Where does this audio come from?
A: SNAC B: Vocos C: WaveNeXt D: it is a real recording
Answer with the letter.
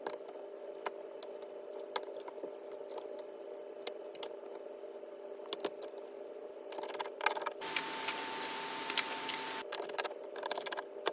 D